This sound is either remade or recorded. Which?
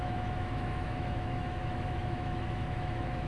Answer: remade